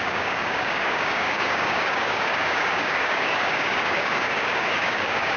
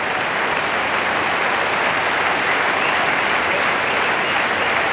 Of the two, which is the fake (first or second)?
first